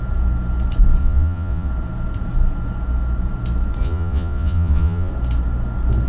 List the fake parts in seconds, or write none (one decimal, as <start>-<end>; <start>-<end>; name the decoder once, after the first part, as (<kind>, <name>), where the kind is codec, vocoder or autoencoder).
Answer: 1.0-1.7 (vocoder, Vocos); 3.8-5.1